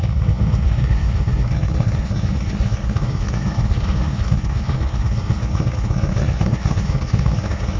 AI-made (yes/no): yes